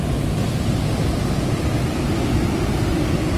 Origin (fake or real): real